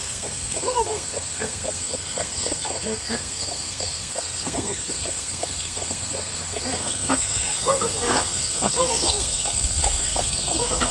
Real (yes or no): no